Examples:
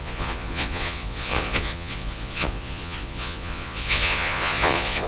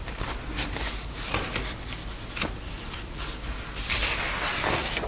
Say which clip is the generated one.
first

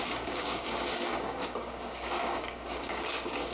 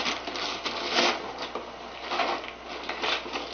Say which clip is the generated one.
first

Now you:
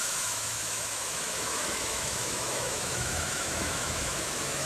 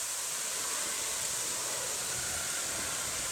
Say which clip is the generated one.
first